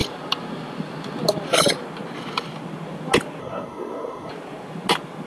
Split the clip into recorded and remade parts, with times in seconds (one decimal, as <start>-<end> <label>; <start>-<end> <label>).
0.0-3.4 recorded; 3.4-4.3 remade; 4.3-5.3 recorded